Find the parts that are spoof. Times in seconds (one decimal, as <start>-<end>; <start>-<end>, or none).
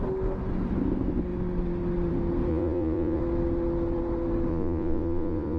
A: 2.5-3.2; 4.5-5.6